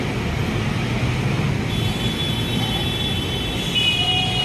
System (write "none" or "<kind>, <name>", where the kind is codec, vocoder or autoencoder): none